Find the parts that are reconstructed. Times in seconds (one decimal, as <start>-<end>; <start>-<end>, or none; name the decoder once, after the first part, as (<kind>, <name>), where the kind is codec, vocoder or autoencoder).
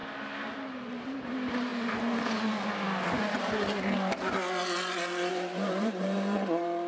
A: 0.5-1.7 (vocoder, BigVGAN v2); 5.3-6.9